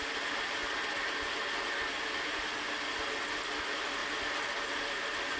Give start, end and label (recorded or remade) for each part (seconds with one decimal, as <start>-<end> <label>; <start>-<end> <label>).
0.0-0.6 remade; 0.6-2.0 recorded; 2.0-4.0 remade; 4.0-4.8 recorded; 4.8-5.4 remade